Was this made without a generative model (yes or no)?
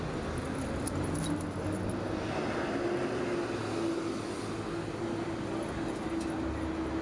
yes